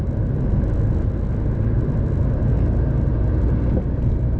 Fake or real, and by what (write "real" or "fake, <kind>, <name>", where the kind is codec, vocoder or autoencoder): real